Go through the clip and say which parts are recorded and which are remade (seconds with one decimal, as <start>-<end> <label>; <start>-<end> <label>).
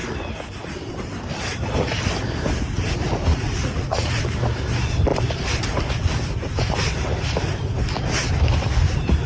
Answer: 0.0-3.3 recorded; 3.3-4.2 remade; 4.2-9.3 recorded